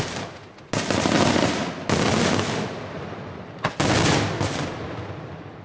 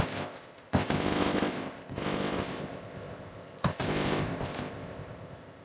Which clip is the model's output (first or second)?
second